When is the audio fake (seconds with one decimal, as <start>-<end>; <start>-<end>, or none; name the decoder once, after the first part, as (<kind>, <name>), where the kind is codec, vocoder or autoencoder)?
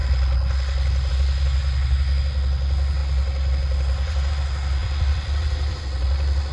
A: 0.0-1.1 (vocoder, BigVGAN v2); 3.0-4.3; 4.8-5.8